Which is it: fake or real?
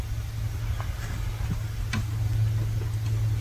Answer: real